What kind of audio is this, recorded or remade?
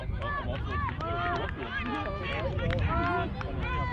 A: recorded